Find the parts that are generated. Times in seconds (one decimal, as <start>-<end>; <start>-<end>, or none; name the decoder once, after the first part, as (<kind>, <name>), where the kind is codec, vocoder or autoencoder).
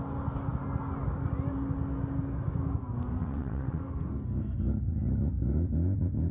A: 3.2-3.8 (vocoder, WaveNeXt)